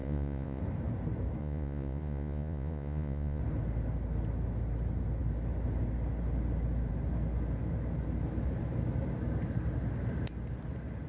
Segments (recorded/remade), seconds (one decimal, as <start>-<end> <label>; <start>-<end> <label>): 0.0-0.6 remade; 0.6-1.4 recorded; 1.4-3.4 remade; 3.4-11.1 recorded